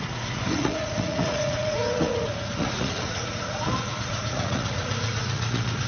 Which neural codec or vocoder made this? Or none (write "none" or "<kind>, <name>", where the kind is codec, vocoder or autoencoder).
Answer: vocoder, Vocos